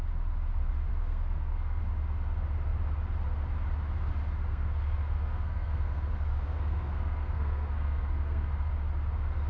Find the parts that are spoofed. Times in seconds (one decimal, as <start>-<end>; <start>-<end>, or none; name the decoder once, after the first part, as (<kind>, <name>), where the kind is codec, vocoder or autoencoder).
0.9-1.8 (codec, SNAC); 4.5-8.7